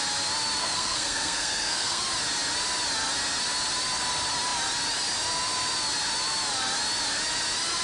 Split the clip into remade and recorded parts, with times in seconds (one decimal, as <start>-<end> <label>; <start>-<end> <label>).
0.0-0.6 recorded; 0.6-2.0 remade; 2.0-7.8 recorded